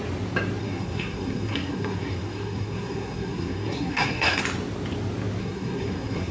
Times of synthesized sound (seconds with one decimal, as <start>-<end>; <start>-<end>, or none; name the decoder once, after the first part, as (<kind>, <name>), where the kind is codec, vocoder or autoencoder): 0.6-4.4 (codec, SNAC); 5.4-6.3